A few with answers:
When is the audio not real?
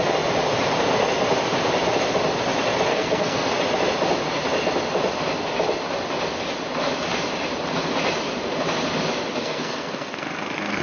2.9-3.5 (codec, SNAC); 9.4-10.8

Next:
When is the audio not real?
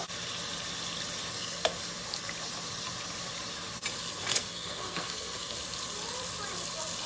4.3-5.6 (codec, SNAC)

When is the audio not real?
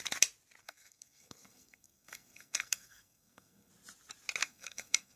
0.6-3.7 (codec, SNAC); 4.4-5.2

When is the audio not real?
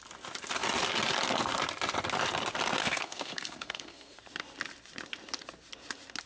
2.8-4.2 (codec, SNAC)